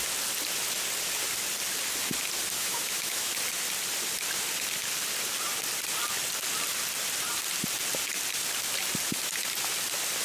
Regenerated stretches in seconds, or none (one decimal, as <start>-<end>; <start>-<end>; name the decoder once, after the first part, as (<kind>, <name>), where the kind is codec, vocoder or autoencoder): 2.6-3.3 (autoencoder, DAC-VAE)